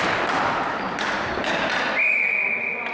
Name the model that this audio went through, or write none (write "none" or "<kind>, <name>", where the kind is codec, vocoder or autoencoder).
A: none